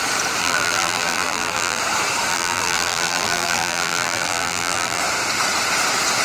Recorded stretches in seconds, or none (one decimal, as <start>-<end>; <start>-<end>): 0.0-0.4; 1.8-2.3; 5.0-6.2